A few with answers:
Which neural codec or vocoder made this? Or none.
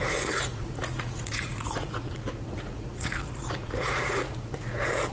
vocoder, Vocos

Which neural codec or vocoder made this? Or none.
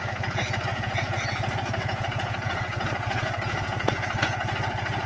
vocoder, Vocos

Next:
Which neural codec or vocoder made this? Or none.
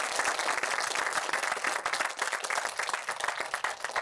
none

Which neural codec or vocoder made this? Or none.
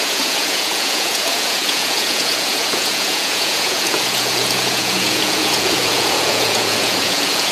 vocoder, Vocos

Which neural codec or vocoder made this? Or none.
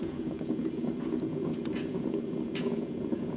vocoder, Vocos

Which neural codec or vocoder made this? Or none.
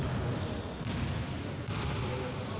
none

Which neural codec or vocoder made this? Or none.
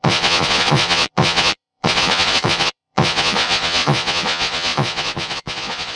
vocoder, Vocos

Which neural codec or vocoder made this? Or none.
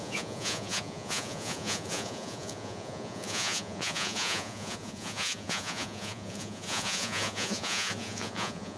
vocoder, Vocos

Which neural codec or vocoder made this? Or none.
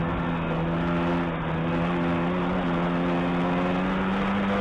none